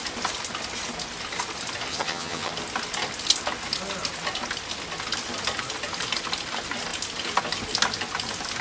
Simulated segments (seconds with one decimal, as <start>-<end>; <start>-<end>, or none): 1.9-2.5